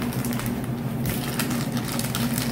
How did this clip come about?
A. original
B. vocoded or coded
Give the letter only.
A